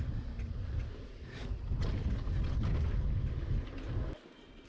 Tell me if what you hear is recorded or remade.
recorded